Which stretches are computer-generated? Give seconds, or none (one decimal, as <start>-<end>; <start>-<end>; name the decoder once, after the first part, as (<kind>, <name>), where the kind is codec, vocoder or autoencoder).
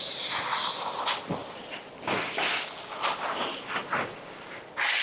3.5-4.5 (codec, DAC)